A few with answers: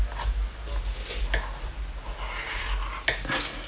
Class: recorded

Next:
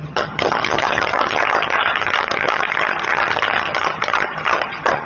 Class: remade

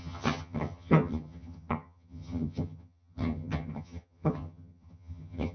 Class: remade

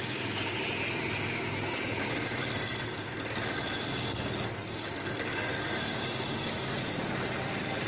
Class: recorded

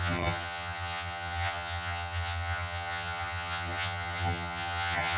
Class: remade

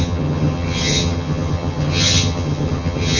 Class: remade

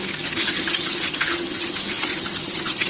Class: remade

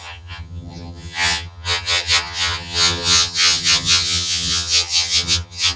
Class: remade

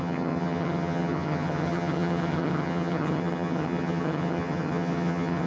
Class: remade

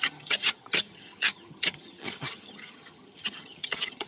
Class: remade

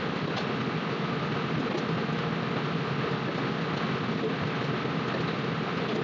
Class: recorded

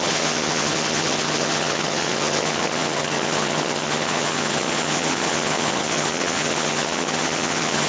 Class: remade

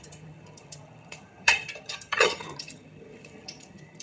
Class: remade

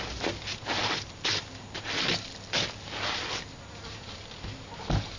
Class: recorded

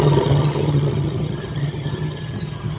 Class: remade